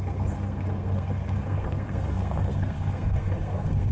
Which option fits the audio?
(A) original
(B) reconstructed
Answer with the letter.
B